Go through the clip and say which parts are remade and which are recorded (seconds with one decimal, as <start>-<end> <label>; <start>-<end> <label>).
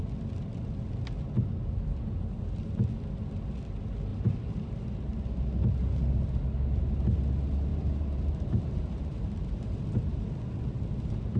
0.0-4.1 recorded; 4.1-4.7 remade; 4.7-7.7 recorded; 7.7-10.4 remade; 10.4-11.4 recorded